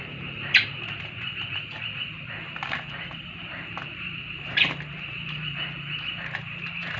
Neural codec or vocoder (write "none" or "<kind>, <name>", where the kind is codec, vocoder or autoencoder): vocoder, BigVGAN v2